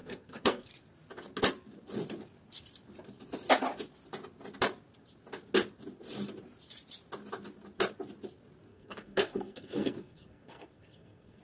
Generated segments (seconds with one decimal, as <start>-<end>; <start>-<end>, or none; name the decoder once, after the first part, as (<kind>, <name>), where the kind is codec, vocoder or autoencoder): 0.0-0.7 (codec, SNAC); 8.7-11.4